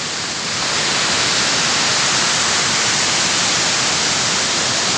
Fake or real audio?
real